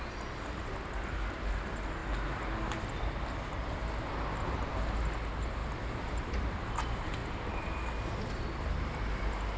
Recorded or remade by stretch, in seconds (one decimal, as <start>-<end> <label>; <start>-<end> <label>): 0.0-9.6 recorded